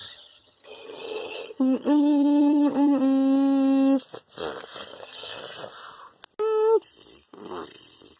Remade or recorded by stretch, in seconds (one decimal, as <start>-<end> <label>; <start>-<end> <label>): 0.0-3.0 remade; 3.0-4.9 recorded; 4.9-5.4 remade; 5.4-8.2 recorded